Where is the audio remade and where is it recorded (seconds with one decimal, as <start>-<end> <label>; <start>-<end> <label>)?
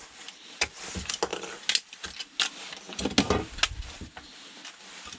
0.0-5.2 recorded